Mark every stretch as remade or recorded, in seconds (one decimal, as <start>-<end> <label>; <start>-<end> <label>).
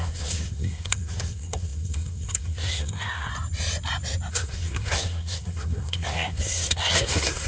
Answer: 0.0-3.3 remade; 3.3-4.3 recorded; 4.3-7.5 remade